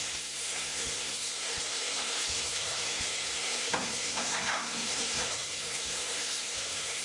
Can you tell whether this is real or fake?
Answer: fake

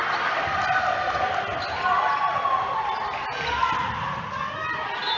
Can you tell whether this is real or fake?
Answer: real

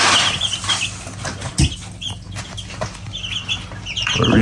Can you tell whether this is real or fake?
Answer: real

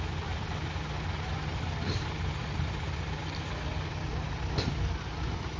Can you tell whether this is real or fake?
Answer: real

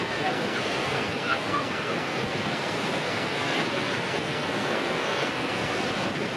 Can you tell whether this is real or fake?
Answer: fake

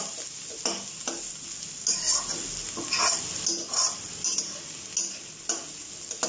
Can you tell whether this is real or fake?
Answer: real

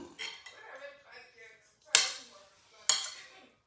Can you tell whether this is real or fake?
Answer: real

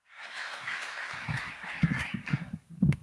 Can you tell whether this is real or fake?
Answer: fake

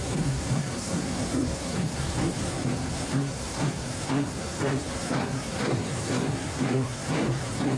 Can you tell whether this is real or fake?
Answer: fake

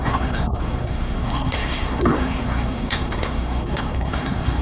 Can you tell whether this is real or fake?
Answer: fake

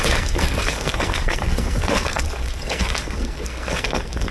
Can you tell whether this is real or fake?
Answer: fake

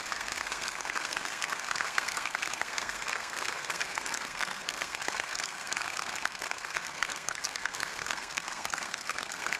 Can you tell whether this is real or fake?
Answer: fake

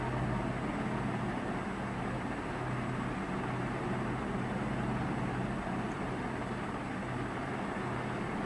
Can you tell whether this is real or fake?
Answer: real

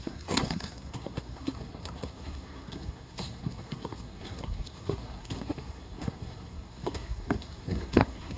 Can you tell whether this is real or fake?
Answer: fake